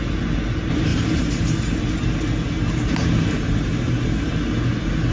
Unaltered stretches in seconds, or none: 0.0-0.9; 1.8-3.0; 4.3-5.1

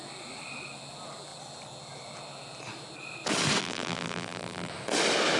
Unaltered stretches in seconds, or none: 0.0-3.6; 4.7-5.4

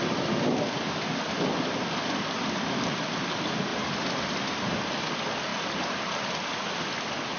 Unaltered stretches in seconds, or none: 3.7-5.1; 5.5-6.3

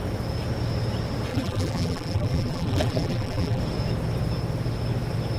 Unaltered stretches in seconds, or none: 0.0-1.3; 3.6-5.4

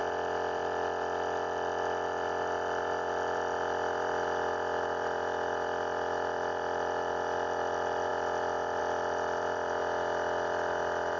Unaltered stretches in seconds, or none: 9.8-11.2

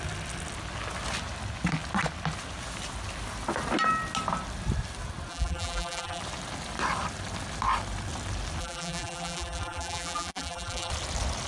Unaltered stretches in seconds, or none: 0.0-5.3; 6.2-8.6; 10.9-11.5

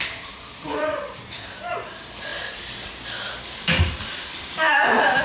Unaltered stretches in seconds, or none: none